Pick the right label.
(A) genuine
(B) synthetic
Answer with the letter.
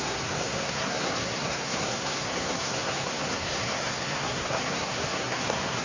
B